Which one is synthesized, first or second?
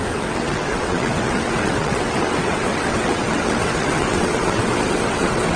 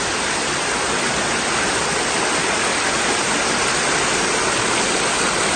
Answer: first